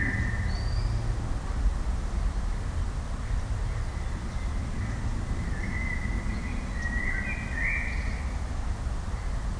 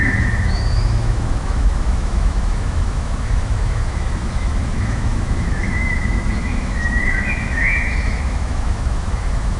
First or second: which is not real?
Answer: second